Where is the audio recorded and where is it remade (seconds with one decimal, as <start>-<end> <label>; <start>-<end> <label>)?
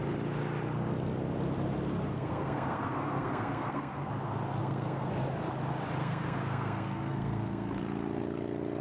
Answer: 0.0-2.1 recorded; 2.1-4.1 remade; 4.1-4.6 recorded; 4.6-5.1 remade; 5.1-6.0 recorded; 6.0-7.8 remade; 7.8-8.8 recorded